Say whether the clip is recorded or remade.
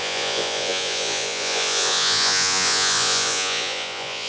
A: remade